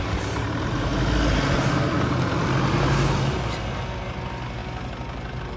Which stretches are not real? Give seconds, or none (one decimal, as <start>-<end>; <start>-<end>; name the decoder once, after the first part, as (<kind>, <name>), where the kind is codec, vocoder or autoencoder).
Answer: none